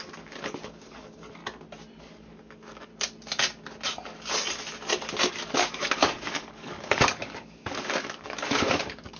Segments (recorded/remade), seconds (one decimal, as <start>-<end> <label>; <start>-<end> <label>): 0.0-1.4 remade; 1.4-2.0 recorded; 2.0-2.9 remade; 2.9-5.3 recorded; 5.3-9.2 remade